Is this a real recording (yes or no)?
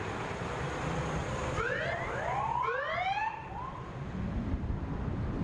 yes